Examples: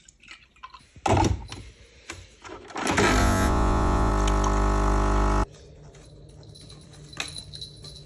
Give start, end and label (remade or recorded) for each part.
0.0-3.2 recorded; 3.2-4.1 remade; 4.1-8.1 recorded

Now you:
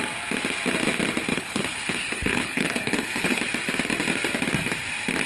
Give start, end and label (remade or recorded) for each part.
0.0-1.3 recorded; 1.3-3.4 remade; 3.4-5.3 recorded

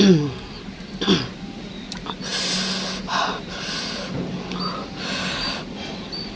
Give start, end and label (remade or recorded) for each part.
0.0-6.4 recorded

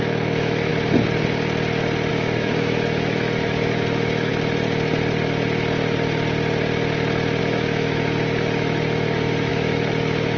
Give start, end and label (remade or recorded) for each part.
0.0-0.7 remade; 0.7-2.1 recorded; 2.1-4.3 remade; 4.3-7.4 recorded; 7.4-10.4 remade

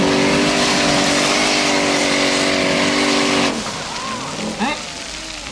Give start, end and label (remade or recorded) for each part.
0.0-5.5 recorded